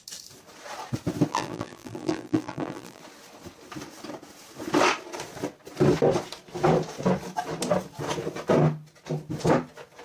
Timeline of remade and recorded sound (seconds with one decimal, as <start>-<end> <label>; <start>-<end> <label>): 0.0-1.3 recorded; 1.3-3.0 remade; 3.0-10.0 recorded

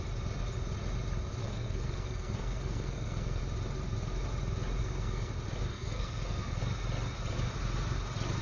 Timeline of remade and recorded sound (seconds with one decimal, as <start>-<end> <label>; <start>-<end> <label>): 0.0-1.4 recorded; 1.4-3.4 remade; 3.4-4.8 recorded; 4.8-5.3 remade; 5.3-5.7 recorded; 5.7-6.6 remade; 6.6-8.4 recorded

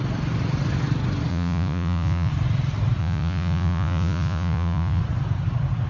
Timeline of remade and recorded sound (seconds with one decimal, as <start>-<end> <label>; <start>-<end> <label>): 0.0-1.3 recorded; 1.3-2.3 remade; 2.3-3.0 recorded; 3.0-5.0 remade; 5.0-5.9 recorded

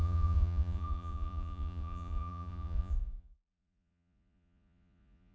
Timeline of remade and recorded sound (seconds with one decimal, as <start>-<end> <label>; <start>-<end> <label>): 0.0-5.3 remade